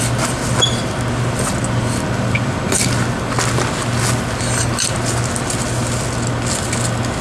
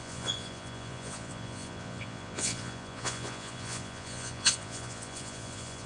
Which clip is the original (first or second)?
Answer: first